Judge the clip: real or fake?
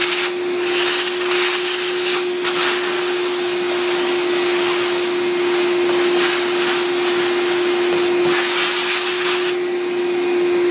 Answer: real